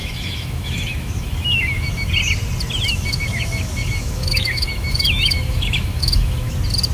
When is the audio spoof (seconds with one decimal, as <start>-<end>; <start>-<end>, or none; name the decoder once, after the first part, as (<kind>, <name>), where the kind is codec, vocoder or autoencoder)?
0.0-2.1 (autoencoder, DAC-VAE); 2.9-6.5